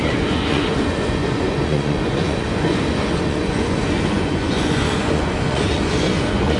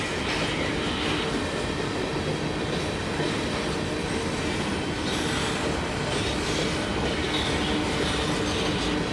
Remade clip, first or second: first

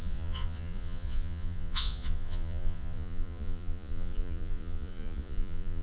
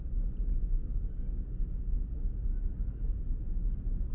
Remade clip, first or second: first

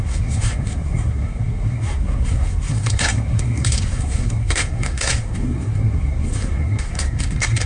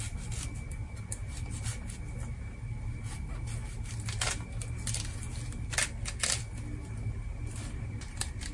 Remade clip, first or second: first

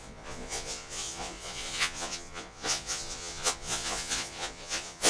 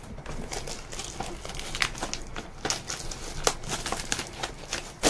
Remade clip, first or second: first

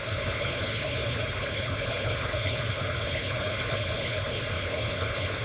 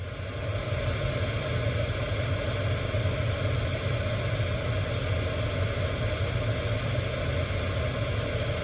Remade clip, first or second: first